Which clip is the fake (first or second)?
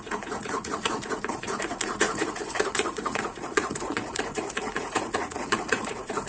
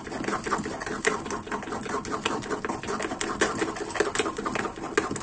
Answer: first